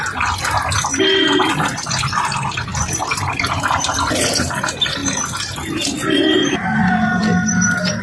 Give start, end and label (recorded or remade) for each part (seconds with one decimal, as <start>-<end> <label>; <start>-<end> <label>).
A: 0.0-8.0 recorded